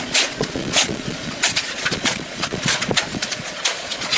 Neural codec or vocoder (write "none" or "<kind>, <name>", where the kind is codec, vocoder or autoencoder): vocoder, Vocos